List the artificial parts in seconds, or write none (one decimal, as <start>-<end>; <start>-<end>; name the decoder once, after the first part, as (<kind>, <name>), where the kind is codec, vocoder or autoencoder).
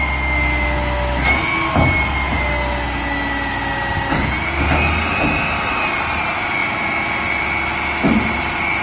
none